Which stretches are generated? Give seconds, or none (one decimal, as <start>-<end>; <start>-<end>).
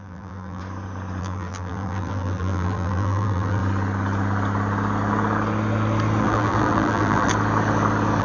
0.0-0.6; 1.2-3.6; 6.2-7.3